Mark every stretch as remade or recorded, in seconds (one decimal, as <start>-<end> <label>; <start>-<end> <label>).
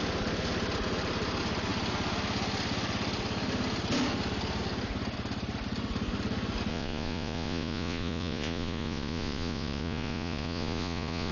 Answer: 0.0-6.7 recorded; 6.7-11.3 remade